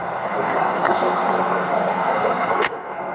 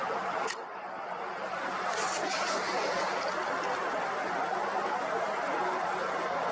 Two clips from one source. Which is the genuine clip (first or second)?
second